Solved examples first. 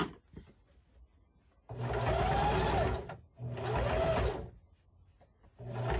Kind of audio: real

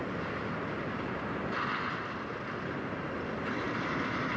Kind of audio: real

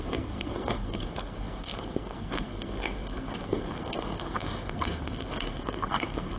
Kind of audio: fake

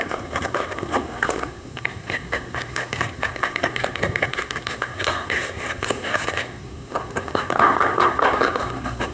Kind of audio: fake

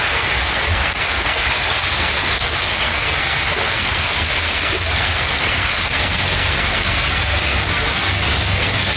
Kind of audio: fake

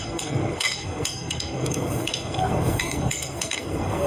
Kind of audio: fake